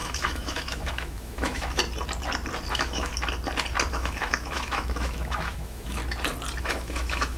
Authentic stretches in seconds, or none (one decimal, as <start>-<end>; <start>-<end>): 1.8-2.7; 3.1-3.9; 6.0-6.6